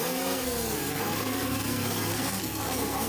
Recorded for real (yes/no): no